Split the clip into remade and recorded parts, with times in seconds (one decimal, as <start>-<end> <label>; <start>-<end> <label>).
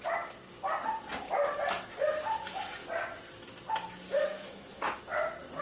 0.0-4.2 recorded; 4.2-4.7 remade; 4.7-5.6 recorded